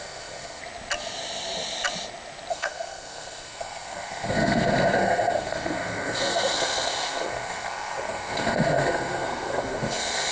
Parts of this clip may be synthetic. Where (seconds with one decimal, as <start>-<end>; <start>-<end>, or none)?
0.0-0.6; 2.5-10.3